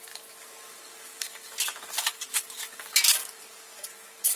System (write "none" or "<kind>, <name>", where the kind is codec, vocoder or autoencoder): codec, DAC